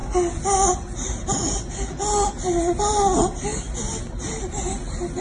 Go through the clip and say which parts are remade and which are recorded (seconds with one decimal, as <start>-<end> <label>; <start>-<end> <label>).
0.0-5.2 recorded